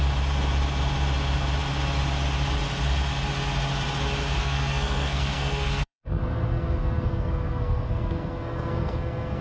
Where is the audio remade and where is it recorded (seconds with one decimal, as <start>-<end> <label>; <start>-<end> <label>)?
0.0-4.4 recorded; 4.4-9.4 remade